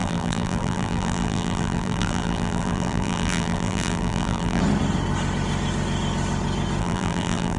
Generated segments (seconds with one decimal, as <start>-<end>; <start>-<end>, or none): 0.0-4.6; 6.8-7.6